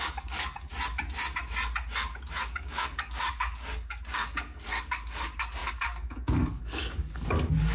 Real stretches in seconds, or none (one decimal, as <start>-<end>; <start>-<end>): 0.7-2.4